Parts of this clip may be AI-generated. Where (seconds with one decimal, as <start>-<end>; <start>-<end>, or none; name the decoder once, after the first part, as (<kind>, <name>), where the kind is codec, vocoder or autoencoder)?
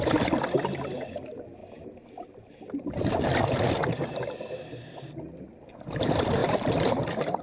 1.6-4.3 (vocoder, BigVGAN v2); 6.4-7.4